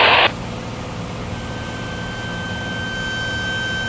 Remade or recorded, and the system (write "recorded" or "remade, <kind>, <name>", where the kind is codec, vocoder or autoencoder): recorded